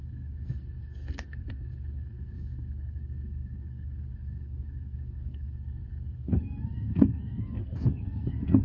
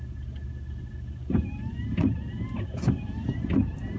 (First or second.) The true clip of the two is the second